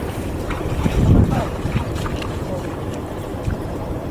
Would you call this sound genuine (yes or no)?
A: no